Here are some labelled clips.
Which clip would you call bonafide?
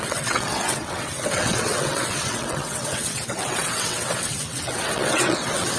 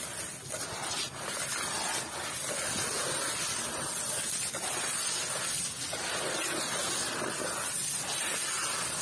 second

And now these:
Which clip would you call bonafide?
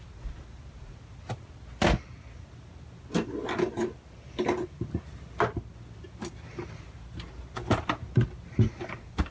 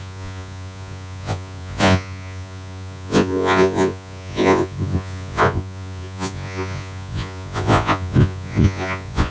first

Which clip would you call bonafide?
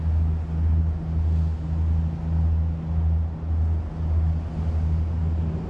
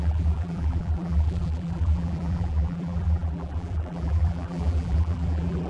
first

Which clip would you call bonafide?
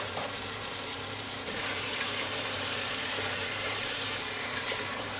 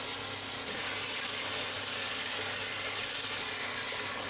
second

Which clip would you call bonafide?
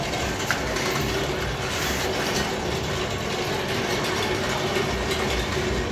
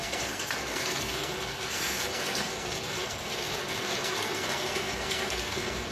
first